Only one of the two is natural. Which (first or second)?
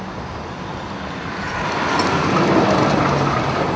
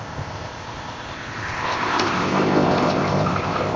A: first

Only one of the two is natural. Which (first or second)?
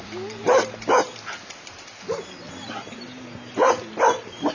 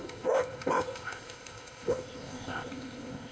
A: first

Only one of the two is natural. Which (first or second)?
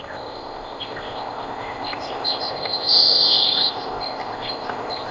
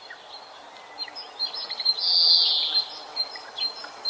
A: second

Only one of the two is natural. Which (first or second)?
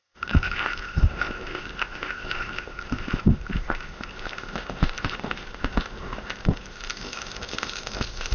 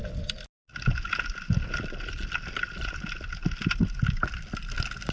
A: second